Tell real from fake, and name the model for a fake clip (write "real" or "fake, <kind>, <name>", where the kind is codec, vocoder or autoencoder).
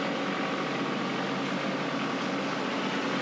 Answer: real